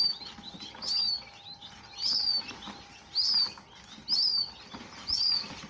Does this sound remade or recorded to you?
recorded